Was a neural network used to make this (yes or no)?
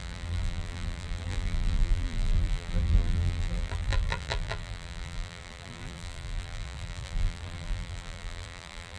yes